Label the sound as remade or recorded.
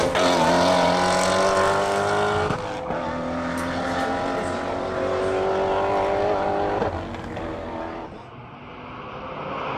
recorded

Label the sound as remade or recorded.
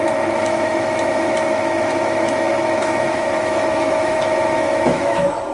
remade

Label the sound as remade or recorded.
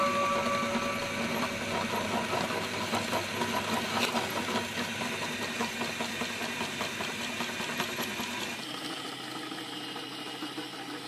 recorded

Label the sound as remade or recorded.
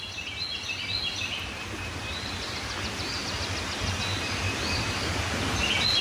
recorded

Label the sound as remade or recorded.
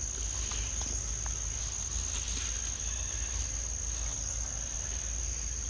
recorded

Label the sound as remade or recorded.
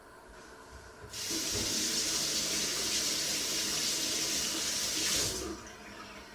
recorded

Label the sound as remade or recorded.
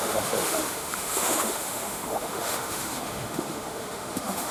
remade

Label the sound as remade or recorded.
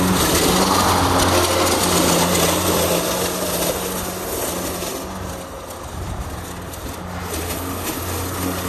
recorded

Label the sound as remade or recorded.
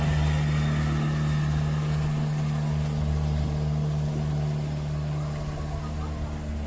recorded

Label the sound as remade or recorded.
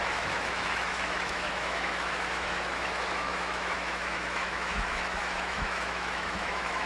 remade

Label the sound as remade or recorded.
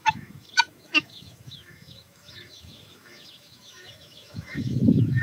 remade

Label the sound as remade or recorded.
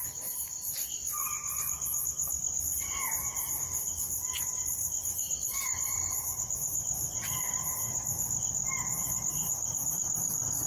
recorded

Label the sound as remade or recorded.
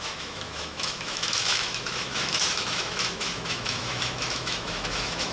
remade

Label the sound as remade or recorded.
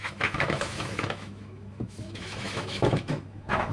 remade